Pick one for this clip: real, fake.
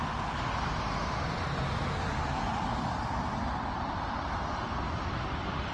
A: real